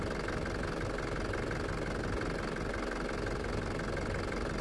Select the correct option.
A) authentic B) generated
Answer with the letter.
A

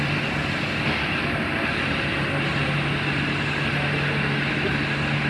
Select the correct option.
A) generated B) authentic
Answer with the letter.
B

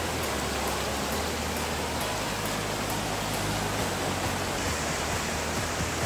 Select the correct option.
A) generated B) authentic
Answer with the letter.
B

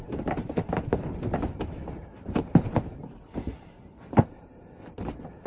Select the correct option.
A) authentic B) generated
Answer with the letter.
B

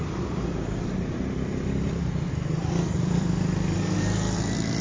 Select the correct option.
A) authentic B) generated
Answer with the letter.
B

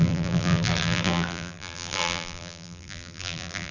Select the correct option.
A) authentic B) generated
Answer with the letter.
B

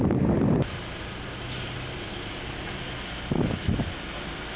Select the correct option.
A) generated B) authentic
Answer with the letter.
B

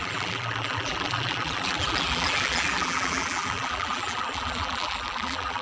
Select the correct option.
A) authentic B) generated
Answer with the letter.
B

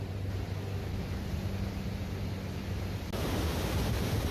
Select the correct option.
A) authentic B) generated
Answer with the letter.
A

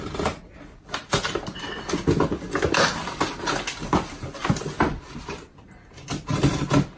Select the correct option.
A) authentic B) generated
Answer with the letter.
A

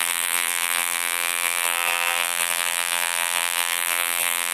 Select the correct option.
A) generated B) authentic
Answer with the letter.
A